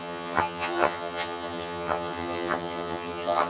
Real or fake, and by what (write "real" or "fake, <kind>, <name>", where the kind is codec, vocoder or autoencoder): fake, vocoder, HiFi-GAN